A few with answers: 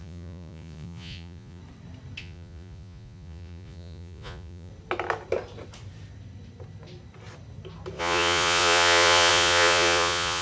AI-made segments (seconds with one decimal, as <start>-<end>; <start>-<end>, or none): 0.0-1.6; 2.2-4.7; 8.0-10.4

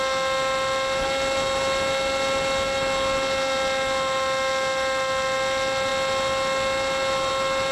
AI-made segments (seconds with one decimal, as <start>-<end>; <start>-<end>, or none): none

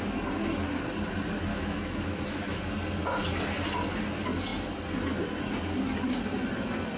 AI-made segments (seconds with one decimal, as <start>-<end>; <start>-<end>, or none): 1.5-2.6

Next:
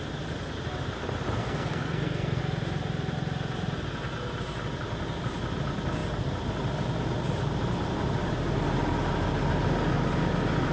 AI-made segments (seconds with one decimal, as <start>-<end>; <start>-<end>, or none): 1.4-2.4